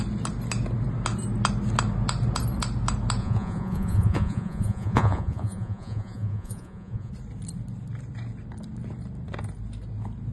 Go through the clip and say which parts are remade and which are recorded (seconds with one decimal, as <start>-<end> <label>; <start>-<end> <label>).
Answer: 0.0-3.2 recorded; 3.2-7.1 remade; 7.1-10.3 recorded